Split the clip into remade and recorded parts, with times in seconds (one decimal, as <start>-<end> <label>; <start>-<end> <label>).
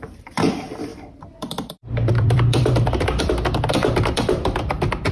0.0-5.1 remade